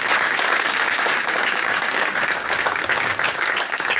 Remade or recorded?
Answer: remade